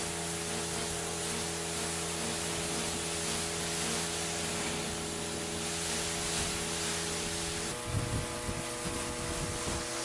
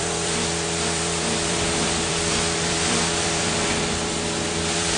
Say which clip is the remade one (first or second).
second